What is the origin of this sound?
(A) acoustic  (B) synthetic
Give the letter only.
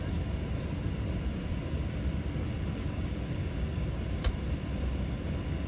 A